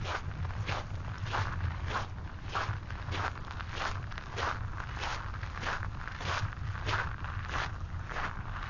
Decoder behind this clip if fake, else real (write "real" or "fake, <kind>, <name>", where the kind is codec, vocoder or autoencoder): real